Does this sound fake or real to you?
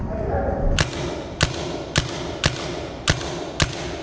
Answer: real